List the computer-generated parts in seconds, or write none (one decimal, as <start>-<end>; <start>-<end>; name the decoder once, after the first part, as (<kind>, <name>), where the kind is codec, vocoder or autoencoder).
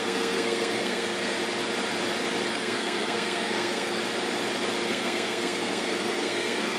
0.0-1.4 (codec, SNAC); 2.5-4.0; 4.9-6.8